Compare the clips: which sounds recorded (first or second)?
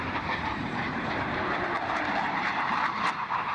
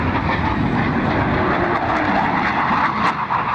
second